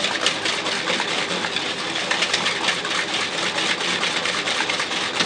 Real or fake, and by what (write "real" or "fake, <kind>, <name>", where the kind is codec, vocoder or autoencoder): real